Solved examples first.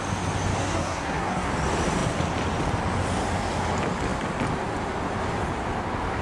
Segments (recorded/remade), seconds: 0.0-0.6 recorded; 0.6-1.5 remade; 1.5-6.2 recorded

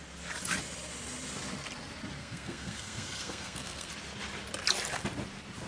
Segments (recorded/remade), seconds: 0.0-2.2 recorded; 2.2-3.9 remade; 3.9-5.7 recorded

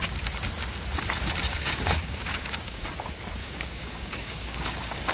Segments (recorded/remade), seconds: 0.0-1.5 recorded; 1.5-2.9 remade; 2.9-3.4 recorded; 3.4-5.1 remade

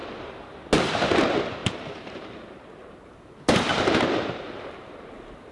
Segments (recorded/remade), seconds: 0.0-1.2 recorded; 1.2-5.5 remade

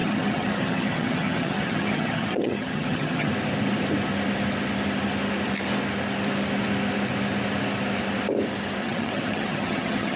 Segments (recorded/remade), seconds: 0.0-3.3 remade; 3.3-8.8 recorded; 8.8-10.2 remade